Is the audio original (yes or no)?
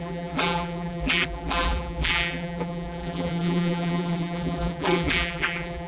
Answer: no